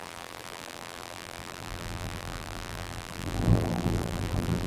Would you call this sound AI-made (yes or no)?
yes